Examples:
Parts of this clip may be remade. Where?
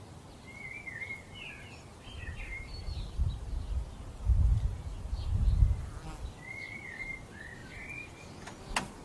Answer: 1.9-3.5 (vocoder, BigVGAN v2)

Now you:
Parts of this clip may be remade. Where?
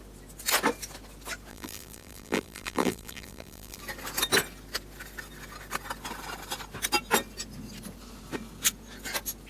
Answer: 1.5-3.8 (vocoder, BigVGAN v2)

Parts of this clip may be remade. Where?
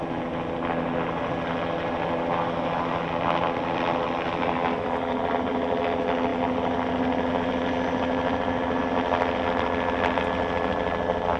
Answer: none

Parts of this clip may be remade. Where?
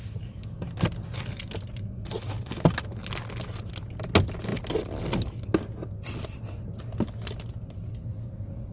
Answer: none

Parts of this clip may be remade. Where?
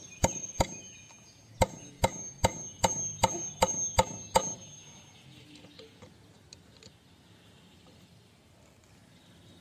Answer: 0.0-0.6 (vocoder, BigVGAN v2)